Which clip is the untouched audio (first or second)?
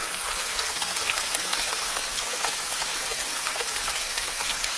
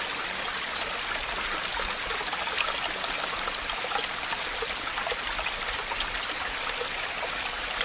second